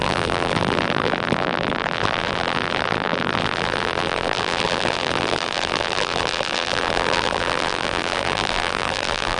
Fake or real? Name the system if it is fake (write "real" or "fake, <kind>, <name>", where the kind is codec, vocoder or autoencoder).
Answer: fake, vocoder, BigVGAN v2